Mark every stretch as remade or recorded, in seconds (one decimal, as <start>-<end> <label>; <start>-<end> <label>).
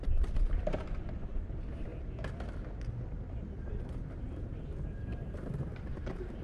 0.0-1.9 remade; 1.9-2.9 recorded; 2.9-6.4 remade